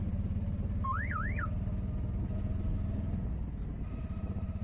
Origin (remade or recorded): recorded